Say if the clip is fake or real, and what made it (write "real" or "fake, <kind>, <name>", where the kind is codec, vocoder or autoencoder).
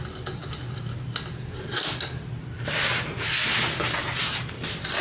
real